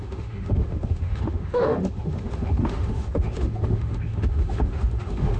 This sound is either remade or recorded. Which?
remade